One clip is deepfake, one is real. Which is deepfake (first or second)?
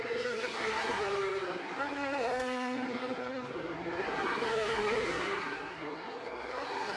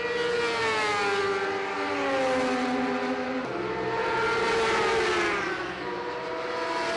first